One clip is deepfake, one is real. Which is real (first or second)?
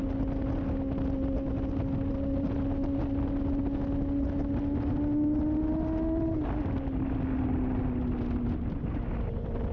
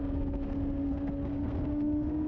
first